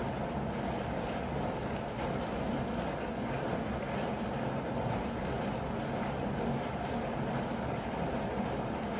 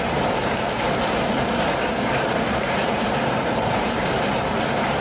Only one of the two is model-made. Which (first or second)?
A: second